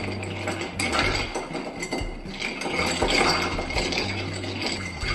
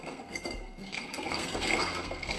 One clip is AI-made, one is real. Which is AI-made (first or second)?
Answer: second